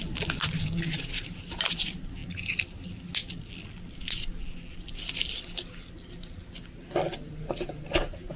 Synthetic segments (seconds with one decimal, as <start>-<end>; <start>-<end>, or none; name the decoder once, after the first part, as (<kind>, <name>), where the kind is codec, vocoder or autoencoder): none